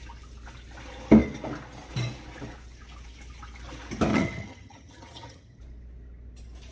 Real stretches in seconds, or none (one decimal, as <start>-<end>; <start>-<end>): 0.0-4.1; 5.6-6.7